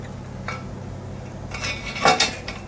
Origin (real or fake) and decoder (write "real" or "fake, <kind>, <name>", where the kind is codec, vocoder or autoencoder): real